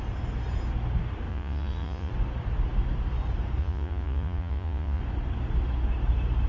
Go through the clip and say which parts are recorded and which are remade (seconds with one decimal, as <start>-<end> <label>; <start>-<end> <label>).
0.0-1.3 recorded; 1.3-2.1 remade; 2.1-3.6 recorded; 3.6-5.0 remade; 5.0-6.5 recorded